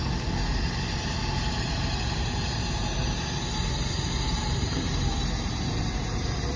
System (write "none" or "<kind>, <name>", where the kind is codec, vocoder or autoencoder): none